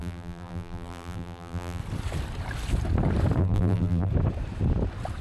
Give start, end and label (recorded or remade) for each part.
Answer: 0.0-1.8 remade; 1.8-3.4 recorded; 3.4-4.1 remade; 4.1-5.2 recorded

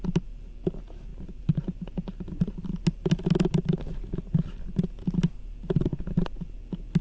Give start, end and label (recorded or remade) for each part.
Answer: 0.0-1.1 recorded; 1.1-2.7 remade; 2.7-7.0 recorded

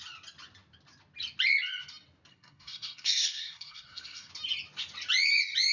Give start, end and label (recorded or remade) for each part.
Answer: 0.0-2.3 recorded; 2.3-4.3 remade; 4.3-5.7 recorded

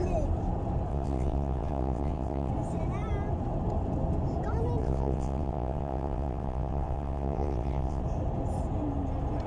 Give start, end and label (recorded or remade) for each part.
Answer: 0.0-0.9 recorded; 0.9-2.5 remade; 2.5-4.8 recorded; 4.8-8.0 remade; 8.0-9.5 recorded

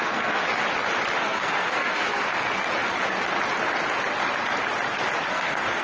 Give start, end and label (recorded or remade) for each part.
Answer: 0.0-0.4 remade; 0.4-1.2 recorded; 1.2-2.3 remade; 2.3-5.3 recorded; 5.3-5.8 remade